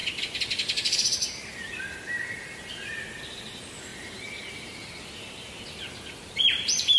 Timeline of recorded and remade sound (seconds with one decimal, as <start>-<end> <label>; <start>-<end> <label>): 0.0-3.2 remade; 3.2-3.9 recorded; 3.9-4.5 remade; 4.5-7.0 recorded